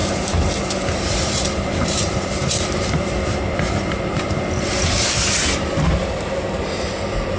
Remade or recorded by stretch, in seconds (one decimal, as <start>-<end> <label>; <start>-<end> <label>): 0.0-4.2 remade; 4.2-7.4 recorded